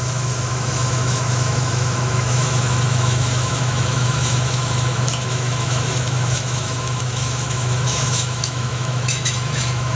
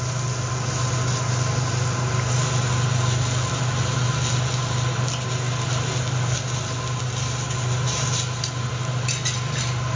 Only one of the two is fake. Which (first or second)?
first